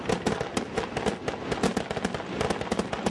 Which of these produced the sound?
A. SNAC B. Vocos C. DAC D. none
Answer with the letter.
D